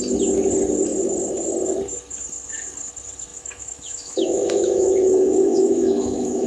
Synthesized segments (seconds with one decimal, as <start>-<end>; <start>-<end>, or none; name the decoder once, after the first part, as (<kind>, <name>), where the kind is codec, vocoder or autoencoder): 3.3-6.5 (autoencoder, DAC-VAE)